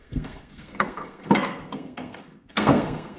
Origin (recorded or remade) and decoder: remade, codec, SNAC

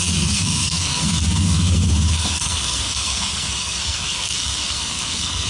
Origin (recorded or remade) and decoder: remade, codec, SNAC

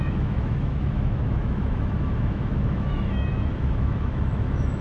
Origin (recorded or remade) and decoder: remade, autoencoder, DAC-VAE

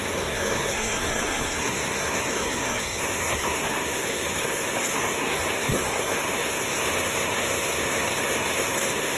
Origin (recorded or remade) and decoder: remade, codec, SNAC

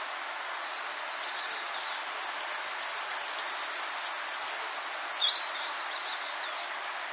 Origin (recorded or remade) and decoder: recorded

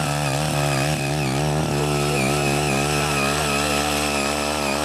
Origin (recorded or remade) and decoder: recorded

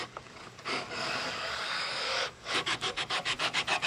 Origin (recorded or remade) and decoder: remade, codec, DAC